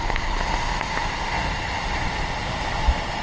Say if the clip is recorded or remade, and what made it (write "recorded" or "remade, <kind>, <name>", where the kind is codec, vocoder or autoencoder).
recorded